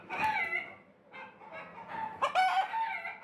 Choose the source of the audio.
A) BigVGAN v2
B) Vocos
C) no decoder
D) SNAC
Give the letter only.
C